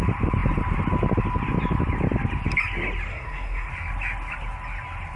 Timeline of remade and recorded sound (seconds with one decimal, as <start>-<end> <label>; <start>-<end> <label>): 0.0-3.1 recorded; 3.1-3.7 remade; 3.7-5.2 recorded